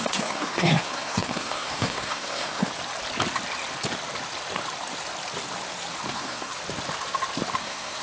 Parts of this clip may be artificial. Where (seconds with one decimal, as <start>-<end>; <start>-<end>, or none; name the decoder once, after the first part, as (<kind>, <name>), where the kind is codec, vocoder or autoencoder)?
0.0-2.7 (codec, SNAC); 6.1-6.5; 7.6-8.0